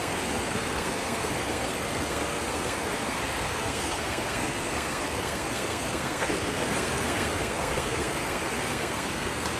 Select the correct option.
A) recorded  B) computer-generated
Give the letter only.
B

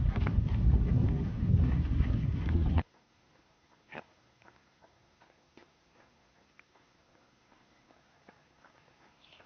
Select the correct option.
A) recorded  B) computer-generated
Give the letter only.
B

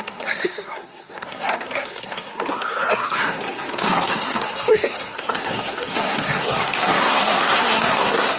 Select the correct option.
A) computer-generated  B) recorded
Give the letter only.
A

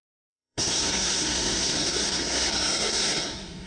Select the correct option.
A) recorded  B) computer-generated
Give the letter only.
B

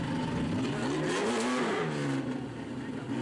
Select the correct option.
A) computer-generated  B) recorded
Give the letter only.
B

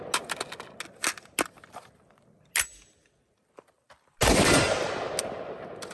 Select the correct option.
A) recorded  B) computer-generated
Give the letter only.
A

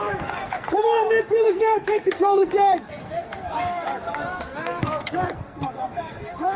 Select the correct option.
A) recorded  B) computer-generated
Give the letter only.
B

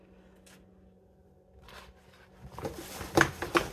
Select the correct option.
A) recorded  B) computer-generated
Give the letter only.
A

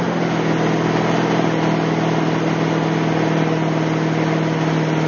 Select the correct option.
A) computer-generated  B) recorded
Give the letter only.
B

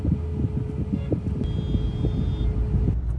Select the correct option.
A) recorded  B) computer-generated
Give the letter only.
A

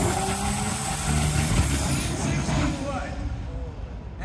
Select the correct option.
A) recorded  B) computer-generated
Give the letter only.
A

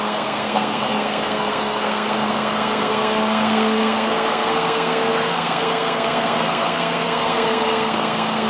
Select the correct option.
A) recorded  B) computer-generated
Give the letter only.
B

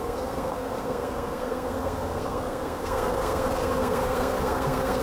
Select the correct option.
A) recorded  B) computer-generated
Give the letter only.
B